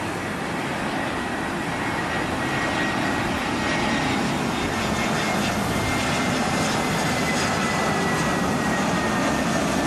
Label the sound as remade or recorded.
recorded